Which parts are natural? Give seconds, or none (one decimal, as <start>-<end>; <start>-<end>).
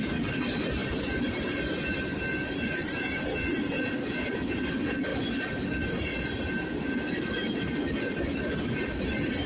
0.0-9.5